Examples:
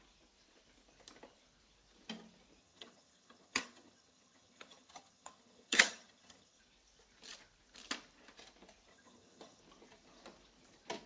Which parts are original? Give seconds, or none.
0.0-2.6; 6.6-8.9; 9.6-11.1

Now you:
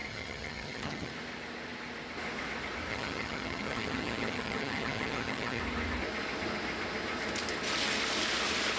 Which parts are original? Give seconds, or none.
1.1-2.9; 5.6-8.8

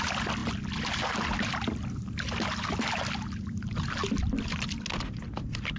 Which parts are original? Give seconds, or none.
0.0-5.8

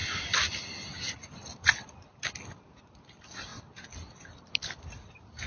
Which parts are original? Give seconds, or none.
0.0-5.5